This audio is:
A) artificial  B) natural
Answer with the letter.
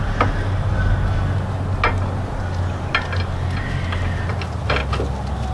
B